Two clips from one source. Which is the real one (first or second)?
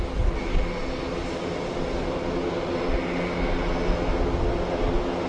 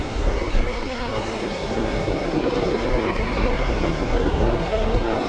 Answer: first